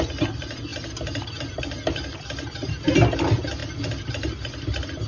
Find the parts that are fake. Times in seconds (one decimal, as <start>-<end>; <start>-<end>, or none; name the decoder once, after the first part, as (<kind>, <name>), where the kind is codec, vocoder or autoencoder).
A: none